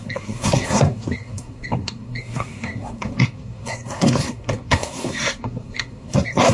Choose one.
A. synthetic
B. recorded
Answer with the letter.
A